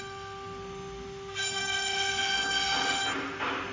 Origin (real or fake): real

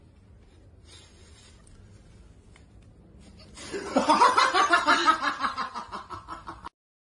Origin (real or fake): real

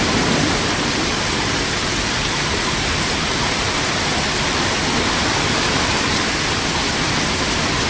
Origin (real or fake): real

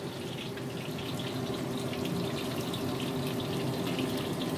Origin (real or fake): real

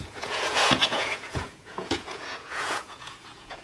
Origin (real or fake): fake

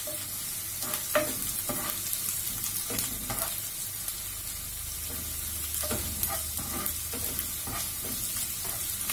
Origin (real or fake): real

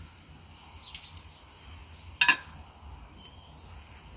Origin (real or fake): real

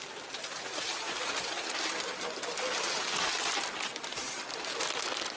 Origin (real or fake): real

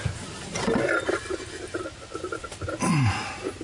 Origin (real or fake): real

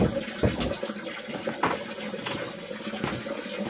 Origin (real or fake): real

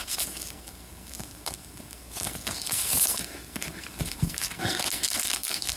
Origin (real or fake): fake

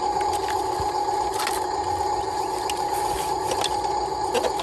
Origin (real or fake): real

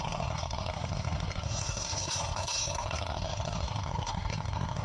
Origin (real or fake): fake